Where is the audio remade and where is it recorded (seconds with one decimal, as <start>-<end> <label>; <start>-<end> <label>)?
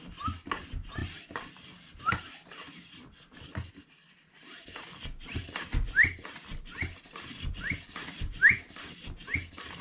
0.0-9.8 recorded